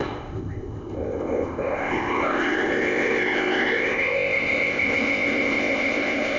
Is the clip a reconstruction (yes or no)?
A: yes